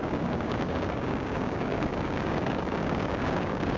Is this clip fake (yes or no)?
yes